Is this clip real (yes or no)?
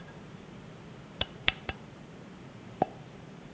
no